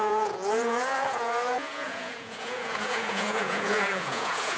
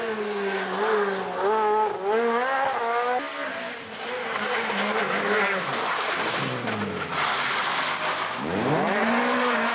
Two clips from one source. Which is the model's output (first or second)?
first